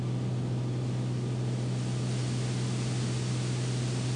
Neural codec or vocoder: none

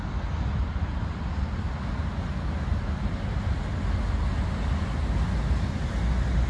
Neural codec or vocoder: none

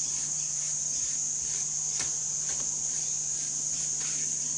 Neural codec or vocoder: none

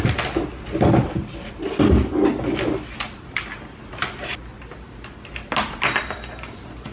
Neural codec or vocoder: none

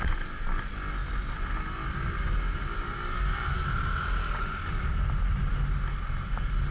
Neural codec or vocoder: none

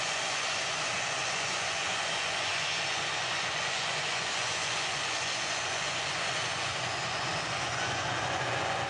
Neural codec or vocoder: vocoder, Vocos